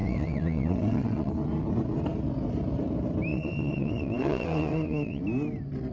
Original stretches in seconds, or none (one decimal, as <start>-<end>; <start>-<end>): 1.3-3.3; 5.2-5.9